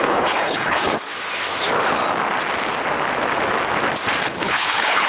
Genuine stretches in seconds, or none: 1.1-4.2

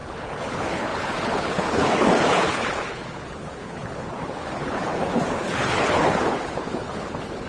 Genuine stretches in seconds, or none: none

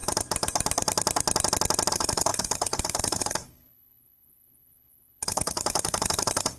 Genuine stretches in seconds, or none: 0.0-1.9